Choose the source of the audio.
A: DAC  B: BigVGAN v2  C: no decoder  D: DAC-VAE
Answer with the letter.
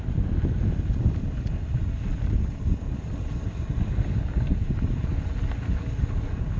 C